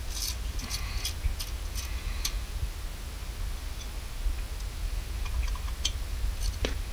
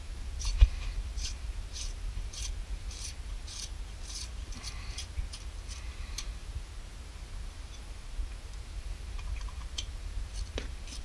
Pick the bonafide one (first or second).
first